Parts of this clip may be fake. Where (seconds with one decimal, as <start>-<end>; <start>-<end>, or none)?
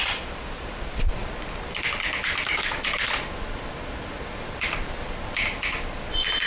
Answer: 4.3-5.2